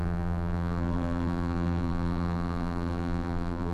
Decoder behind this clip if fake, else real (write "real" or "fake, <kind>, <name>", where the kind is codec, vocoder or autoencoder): fake, vocoder, BigVGAN v2